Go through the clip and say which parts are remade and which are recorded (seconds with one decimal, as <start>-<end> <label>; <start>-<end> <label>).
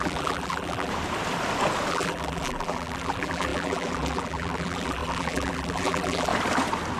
0.0-0.9 remade; 0.9-1.9 recorded; 1.9-6.3 remade; 6.3-7.0 recorded